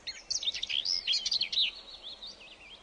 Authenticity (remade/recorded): recorded